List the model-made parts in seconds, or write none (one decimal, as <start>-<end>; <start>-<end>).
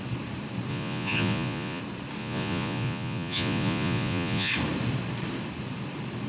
0.7-1.8; 2.2-4.5